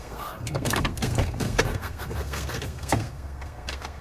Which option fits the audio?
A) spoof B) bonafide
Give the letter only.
A